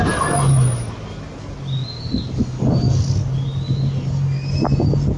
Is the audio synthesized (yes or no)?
no